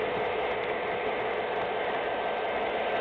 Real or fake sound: real